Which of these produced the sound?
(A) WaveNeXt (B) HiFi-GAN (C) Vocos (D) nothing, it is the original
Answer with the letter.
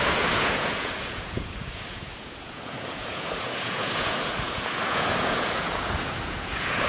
C